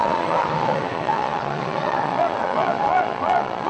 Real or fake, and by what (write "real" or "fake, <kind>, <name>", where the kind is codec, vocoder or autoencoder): fake, vocoder, Vocos